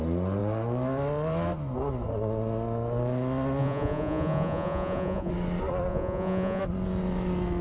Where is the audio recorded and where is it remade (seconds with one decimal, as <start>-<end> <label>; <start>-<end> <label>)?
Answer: 0.0-3.6 recorded; 3.6-5.3 remade; 5.3-5.9 recorded; 5.9-6.6 remade; 6.6-7.6 recorded